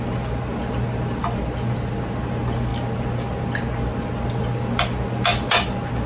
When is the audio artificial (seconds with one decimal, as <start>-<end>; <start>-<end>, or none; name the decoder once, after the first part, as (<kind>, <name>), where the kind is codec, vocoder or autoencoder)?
none